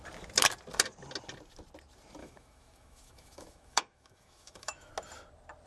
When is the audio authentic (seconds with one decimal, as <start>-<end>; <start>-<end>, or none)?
0.0-2.2; 4.9-5.7